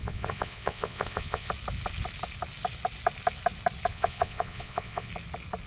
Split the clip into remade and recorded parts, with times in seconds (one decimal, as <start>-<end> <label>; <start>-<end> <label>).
0.0-1.5 remade; 1.5-3.9 recorded; 3.9-5.1 remade; 5.1-5.7 recorded